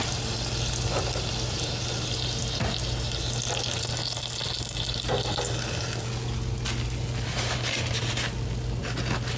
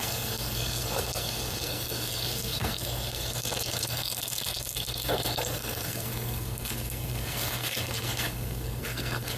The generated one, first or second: second